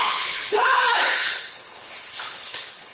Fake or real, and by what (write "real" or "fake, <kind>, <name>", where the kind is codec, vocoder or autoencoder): fake, codec, HILCodec